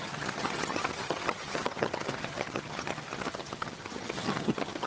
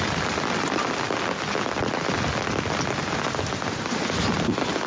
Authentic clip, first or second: second